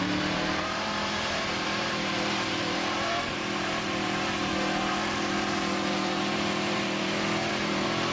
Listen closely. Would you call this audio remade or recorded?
remade